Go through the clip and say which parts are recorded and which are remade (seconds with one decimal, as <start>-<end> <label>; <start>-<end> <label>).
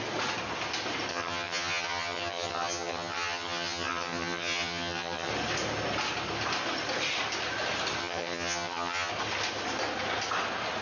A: 0.0-1.1 recorded; 1.1-5.3 remade; 5.3-8.0 recorded; 8.0-9.1 remade; 9.1-10.8 recorded